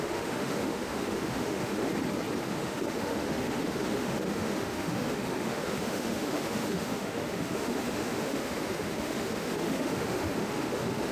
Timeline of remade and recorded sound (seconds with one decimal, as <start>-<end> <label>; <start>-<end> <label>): 0.0-1.9 remade; 1.9-2.4 recorded; 2.4-11.1 remade